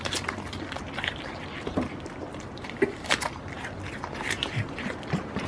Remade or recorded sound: recorded